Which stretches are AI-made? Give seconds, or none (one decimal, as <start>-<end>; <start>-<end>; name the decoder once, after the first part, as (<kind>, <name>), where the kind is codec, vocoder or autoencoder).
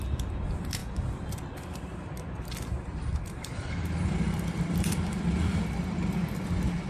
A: 2.7-5.6 (vocoder, BigVGAN v2)